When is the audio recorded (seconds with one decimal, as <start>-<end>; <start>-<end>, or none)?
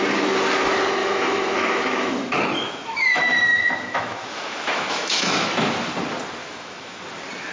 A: 0.0-1.0; 5.5-6.4; 7.0-7.5